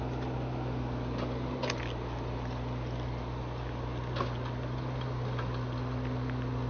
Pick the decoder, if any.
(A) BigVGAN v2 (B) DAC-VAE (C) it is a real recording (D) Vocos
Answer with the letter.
C